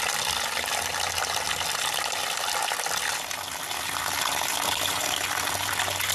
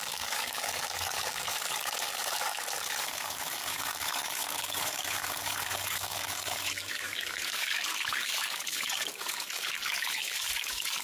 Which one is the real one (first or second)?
first